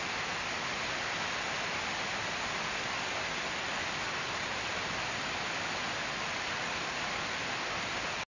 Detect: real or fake real